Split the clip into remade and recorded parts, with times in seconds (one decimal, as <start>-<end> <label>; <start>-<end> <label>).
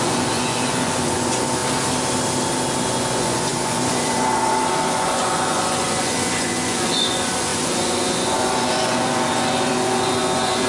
0.0-1.6 remade; 1.6-2.8 recorded; 2.8-10.7 remade